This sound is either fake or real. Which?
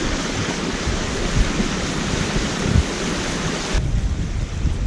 real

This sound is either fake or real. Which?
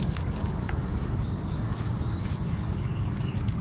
fake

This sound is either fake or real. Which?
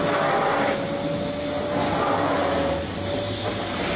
real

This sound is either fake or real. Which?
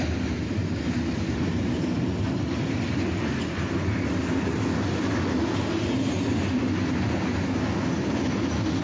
real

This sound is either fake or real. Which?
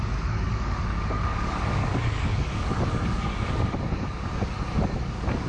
fake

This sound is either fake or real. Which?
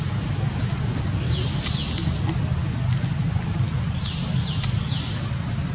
real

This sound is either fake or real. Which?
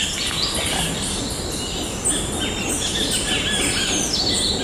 real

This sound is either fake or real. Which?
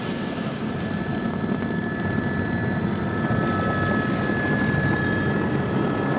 real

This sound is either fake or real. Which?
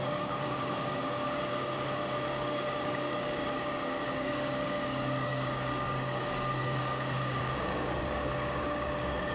fake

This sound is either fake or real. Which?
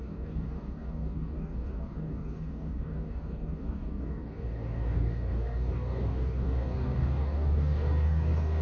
fake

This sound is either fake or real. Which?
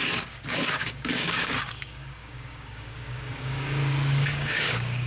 fake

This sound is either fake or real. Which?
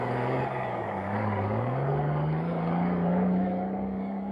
fake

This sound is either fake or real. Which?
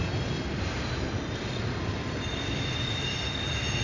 real